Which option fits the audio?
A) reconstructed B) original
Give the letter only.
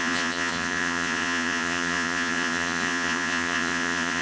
A